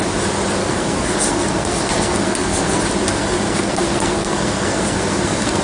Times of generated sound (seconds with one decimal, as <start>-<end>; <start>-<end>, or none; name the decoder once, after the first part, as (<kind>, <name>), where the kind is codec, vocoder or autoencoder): 0.6-2.8 (codec, SNAC); 3.2-5.6